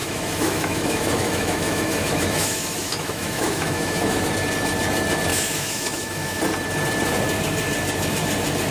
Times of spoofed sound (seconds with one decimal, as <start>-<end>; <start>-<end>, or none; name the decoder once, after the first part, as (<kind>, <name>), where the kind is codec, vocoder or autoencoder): 0.0-4.3 (autoencoder, DAC-VAE); 5.3-6.4